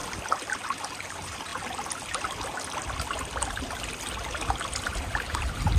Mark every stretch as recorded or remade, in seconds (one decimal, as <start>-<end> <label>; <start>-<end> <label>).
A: 0.0-1.0 recorded; 1.0-1.5 remade; 1.5-5.0 recorded; 5.0-5.8 remade